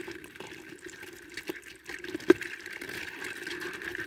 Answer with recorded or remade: remade